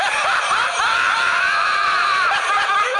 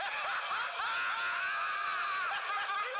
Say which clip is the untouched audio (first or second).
second